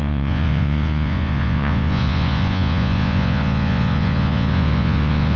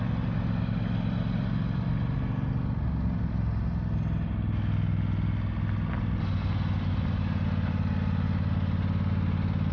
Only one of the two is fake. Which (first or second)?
first